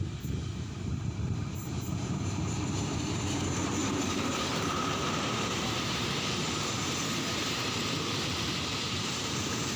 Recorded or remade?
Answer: remade